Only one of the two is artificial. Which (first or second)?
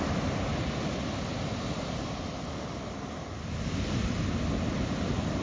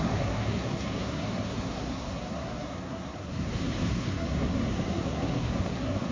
second